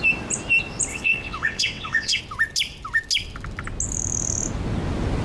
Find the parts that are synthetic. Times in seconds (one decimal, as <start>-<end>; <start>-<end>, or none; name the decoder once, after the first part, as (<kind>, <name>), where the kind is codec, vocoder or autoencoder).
0.9-2.2 (vocoder, WaveNeXt)